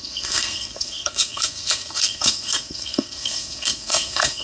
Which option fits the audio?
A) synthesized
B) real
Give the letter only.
A